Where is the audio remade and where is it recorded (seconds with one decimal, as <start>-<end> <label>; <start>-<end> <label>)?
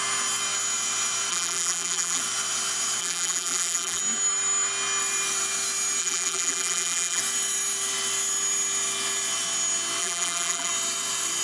0.0-1.3 recorded; 1.3-2.2 remade; 2.2-3.0 recorded; 3.0-4.0 remade; 4.0-6.0 recorded; 6.0-7.2 remade; 7.2-10.0 recorded; 10.0-10.7 remade; 10.7-11.4 recorded